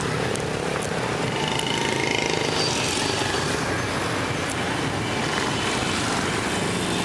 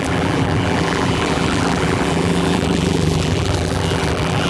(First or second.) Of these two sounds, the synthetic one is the second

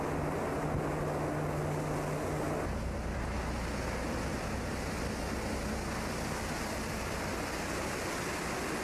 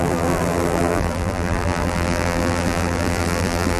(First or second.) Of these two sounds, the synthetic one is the second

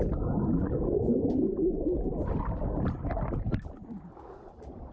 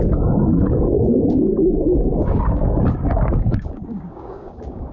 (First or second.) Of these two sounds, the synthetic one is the second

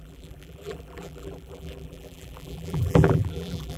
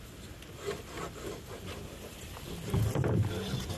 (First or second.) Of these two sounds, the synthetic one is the first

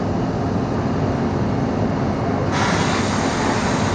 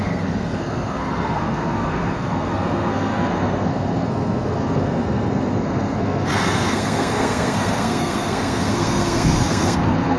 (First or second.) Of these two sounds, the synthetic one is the second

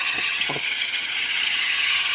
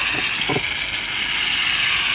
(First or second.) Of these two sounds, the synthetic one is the first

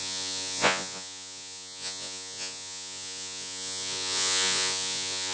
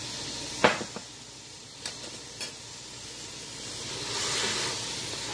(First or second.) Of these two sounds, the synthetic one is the first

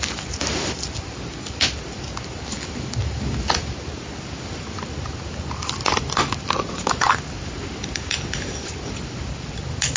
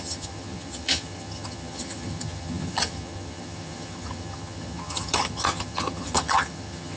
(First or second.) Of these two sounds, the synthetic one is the second